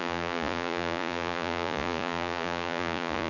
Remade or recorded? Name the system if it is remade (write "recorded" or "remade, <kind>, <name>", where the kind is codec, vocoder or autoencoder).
remade, vocoder, Vocos